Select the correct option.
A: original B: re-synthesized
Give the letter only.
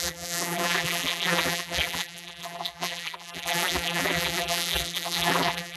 B